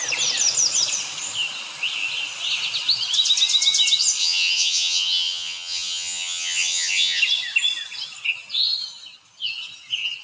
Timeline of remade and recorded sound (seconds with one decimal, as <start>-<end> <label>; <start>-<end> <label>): 0.0-4.2 recorded; 4.2-7.2 remade; 7.2-10.2 recorded